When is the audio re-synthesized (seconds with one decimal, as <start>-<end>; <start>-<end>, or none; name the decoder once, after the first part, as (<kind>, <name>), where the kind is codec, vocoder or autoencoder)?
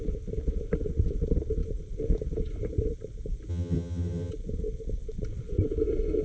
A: 3.5-4.3 (vocoder, HiFi-GAN)